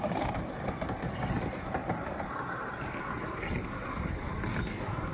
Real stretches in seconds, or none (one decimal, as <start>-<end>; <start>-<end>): 0.0-5.1